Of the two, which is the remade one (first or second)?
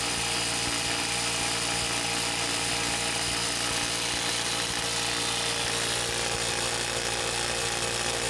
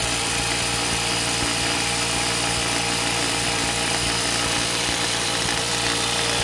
second